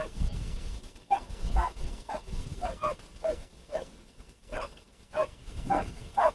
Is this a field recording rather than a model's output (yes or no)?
no